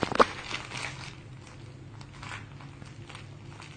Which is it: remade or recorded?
recorded